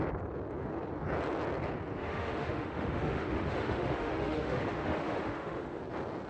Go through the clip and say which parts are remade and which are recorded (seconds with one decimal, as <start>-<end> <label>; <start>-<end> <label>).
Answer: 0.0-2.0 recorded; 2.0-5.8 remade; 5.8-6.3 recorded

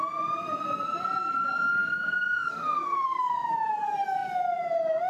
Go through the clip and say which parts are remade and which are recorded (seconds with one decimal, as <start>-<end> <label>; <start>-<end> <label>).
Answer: 0.0-1.8 recorded; 1.8-3.5 remade; 3.5-5.1 recorded

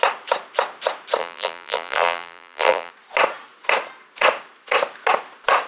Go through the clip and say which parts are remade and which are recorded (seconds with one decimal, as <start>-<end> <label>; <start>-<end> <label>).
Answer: 0.0-1.2 recorded; 1.2-2.9 remade; 2.9-5.7 recorded

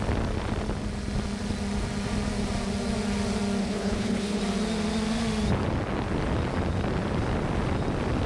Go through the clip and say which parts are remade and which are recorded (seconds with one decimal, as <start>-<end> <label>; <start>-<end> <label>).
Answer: 0.0-3.6 recorded; 3.6-4.4 remade; 4.4-8.3 recorded

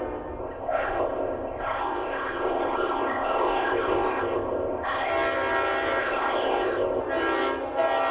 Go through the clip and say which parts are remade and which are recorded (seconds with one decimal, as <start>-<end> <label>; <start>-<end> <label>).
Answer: 0.0-0.4 recorded; 0.4-5.1 remade; 5.1-6.0 recorded; 6.0-7.0 remade; 7.0-8.1 recorded